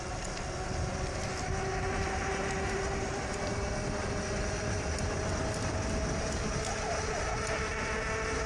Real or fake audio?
real